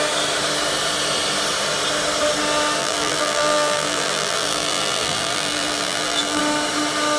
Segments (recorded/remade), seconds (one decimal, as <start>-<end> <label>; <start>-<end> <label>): 0.0-2.8 recorded; 2.8-6.4 remade; 6.4-7.2 recorded